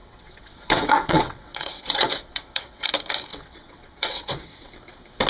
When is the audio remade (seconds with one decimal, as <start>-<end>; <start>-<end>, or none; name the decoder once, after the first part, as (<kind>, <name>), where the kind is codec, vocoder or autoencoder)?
0.0-2.9 (vocoder, WaveNeXt); 3.3-4.7